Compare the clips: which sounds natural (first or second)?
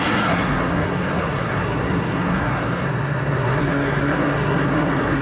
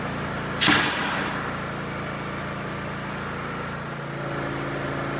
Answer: second